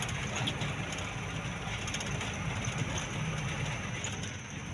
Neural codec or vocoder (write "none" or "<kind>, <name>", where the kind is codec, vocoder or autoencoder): none